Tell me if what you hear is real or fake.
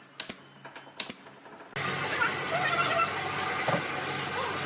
real